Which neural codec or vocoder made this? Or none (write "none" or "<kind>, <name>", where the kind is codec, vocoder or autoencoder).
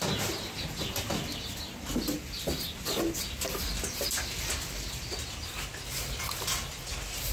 none